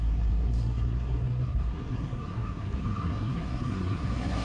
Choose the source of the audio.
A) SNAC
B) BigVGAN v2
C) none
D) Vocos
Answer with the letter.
A